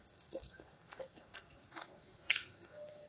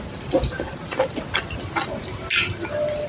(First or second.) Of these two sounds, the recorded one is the second